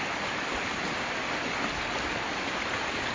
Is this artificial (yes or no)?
no